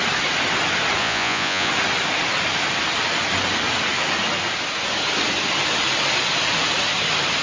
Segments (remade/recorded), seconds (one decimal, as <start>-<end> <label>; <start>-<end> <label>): 0.0-1.0 recorded; 1.0-1.7 remade; 1.7-7.4 recorded